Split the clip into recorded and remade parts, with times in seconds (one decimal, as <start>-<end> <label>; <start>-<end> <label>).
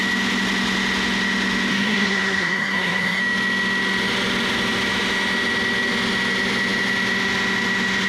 0.0-1.7 recorded; 1.7-3.2 remade; 3.2-8.1 recorded